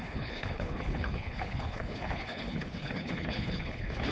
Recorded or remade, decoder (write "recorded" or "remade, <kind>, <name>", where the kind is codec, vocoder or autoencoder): remade, codec, HILCodec